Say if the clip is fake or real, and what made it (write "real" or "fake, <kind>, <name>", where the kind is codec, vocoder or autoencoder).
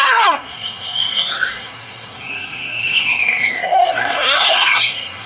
fake, codec, SNAC